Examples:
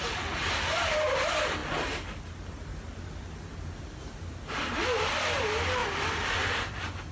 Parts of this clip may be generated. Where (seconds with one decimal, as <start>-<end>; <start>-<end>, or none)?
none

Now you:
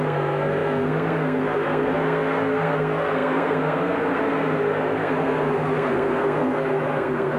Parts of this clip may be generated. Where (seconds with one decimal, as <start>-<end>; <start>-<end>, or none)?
0.0-7.4

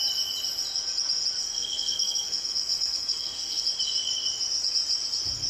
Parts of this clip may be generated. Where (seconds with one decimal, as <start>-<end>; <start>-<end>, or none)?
1.4-3.6

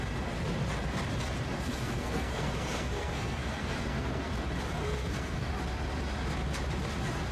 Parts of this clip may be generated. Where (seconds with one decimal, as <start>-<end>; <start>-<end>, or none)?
1.7-4.3; 4.8-5.5

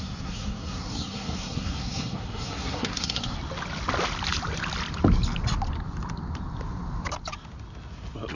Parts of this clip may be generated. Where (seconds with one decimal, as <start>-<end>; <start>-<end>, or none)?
0.0-3.4